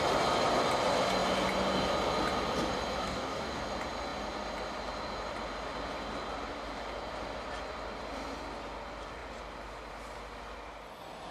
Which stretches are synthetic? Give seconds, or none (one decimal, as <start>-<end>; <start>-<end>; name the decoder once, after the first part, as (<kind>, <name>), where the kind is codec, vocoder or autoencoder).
3.0-3.6 (codec, DAC)